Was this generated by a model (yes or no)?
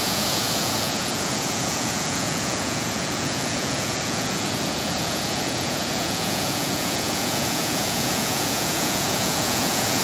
yes